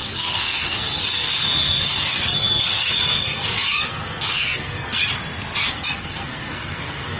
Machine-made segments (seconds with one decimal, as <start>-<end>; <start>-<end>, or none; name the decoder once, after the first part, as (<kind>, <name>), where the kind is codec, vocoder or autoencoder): 0.0-5.0 (codec, SNAC); 5.7-7.2